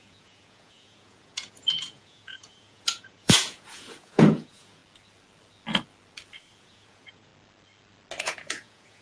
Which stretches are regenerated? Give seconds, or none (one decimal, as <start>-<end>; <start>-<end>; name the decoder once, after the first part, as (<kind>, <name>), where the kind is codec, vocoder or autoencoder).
0.0-4.8 (vocoder, Vocos); 6.6-7.3; 8.2-9.0